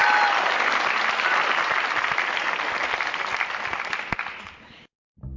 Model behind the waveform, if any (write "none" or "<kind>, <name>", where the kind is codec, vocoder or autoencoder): none